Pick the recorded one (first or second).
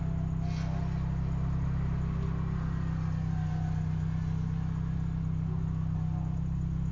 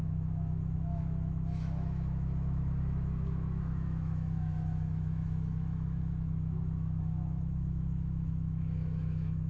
first